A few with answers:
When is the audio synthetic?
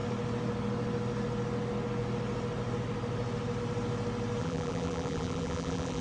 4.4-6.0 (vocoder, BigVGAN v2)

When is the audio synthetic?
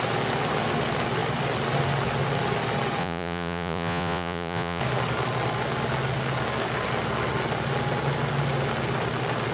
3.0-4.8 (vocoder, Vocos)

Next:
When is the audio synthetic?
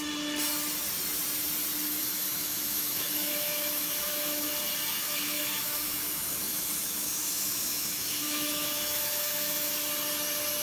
2.0-4.5 (autoencoder, DAC-VAE); 4.9-9.7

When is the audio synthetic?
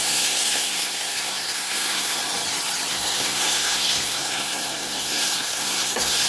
0.0-2.2 (codec, SNAC); 2.9-6.3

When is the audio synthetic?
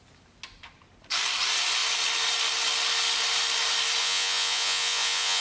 4.0-5.4 (vocoder, Vocos)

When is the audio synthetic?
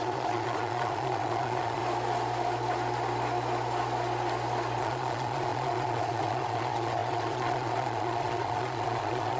0.0-1.8 (vocoder, Vocos); 4.8-9.4